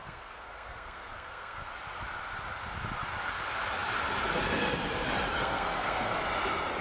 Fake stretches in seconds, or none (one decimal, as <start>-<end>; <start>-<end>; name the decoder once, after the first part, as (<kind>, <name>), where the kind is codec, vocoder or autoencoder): 0.0-1.7 (codec, SNAC); 5.4-6.2